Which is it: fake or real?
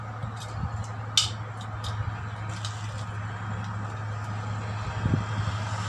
real